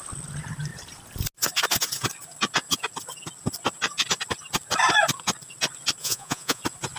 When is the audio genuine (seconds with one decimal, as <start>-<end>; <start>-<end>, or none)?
0.0-6.0; 6.6-7.0